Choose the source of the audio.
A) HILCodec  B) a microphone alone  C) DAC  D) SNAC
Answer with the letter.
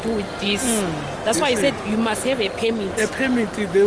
B